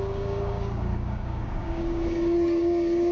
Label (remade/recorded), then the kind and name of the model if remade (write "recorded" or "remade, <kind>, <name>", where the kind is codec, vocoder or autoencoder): remade, codec, DAC